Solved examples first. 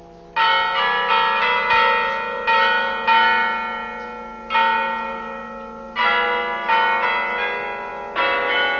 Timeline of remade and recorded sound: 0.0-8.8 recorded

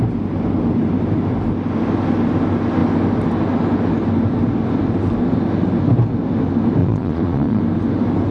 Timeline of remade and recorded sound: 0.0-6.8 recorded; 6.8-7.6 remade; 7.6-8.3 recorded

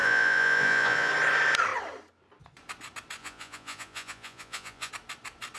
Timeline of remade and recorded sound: 0.0-1.1 remade; 1.1-3.2 recorded; 3.2-4.9 remade; 4.9-5.6 recorded

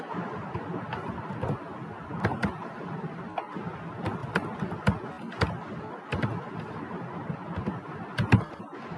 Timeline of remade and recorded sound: 0.0-9.0 recorded